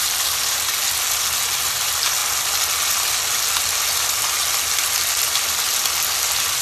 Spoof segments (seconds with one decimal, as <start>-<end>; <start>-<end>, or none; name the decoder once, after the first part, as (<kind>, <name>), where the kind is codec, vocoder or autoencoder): none